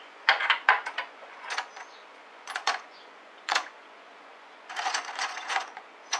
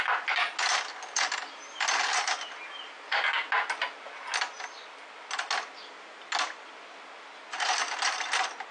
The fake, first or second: first